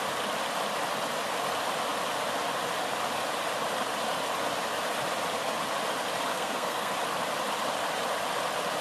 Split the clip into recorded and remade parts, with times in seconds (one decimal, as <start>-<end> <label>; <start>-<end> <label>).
0.0-6.3 recorded; 6.3-6.9 remade; 6.9-8.8 recorded